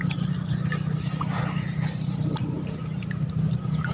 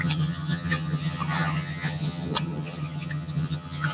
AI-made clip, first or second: second